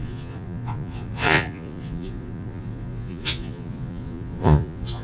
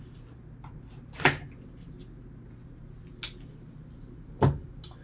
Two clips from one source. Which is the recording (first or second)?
second